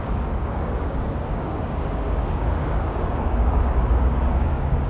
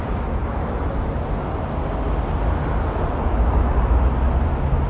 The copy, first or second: first